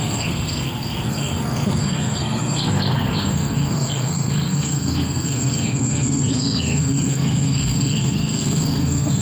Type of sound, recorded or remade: remade